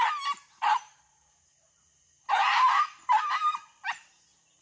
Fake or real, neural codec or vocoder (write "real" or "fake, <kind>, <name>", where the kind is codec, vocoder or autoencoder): fake, vocoder, BigVGAN v2